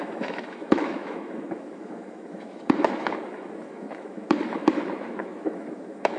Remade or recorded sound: remade